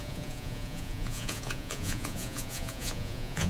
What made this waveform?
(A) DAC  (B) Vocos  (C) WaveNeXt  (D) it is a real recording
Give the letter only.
B